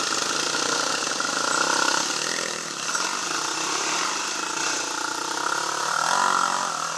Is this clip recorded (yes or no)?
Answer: yes